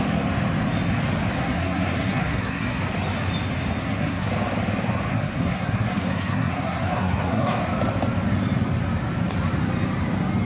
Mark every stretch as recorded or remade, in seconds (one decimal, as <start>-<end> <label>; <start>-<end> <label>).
0.0-1.4 recorded; 1.4-2.8 remade; 2.8-3.8 recorded; 3.8-4.3 remade; 4.3-5.1 recorded; 5.1-7.6 remade; 7.6-10.5 recorded